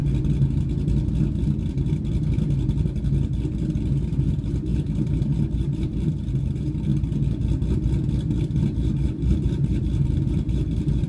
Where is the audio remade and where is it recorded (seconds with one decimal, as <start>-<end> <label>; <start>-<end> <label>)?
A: 0.0-4.2 recorded; 4.2-6.9 remade; 6.9-8.4 recorded; 8.4-11.1 remade